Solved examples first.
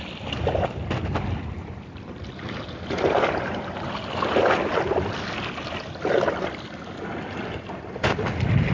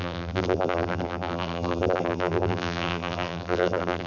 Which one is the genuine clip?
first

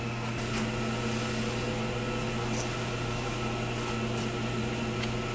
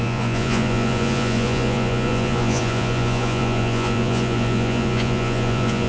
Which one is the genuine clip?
first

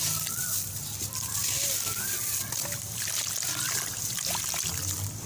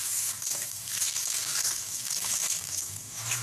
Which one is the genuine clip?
first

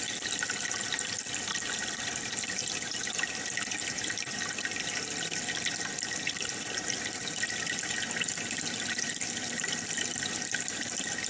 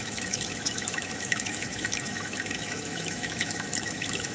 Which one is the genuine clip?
first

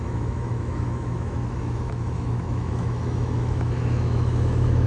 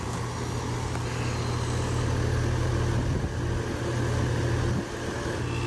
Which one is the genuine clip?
second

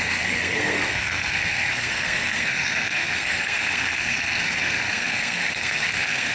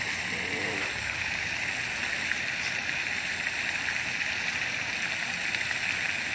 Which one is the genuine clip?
second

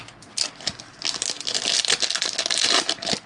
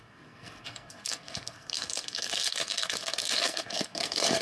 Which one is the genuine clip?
first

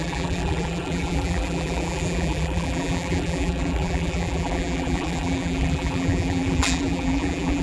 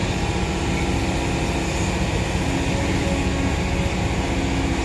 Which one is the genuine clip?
second